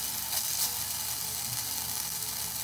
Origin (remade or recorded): recorded